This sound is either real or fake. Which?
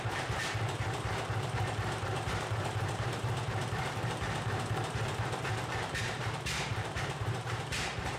fake